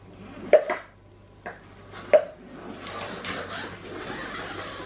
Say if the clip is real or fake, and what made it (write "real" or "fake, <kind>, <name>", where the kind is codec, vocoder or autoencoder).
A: real